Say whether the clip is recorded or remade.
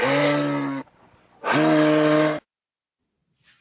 recorded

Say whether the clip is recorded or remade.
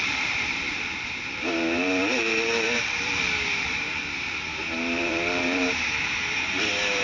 remade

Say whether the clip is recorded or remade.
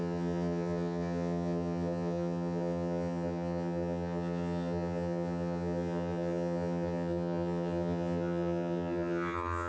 remade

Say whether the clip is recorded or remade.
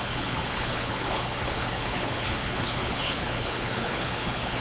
remade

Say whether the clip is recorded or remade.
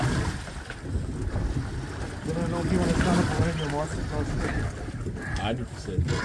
recorded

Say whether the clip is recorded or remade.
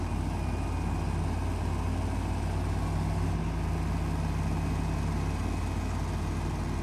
recorded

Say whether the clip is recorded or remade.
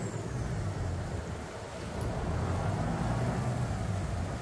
recorded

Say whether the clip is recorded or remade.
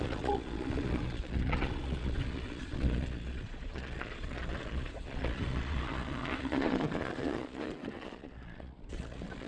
remade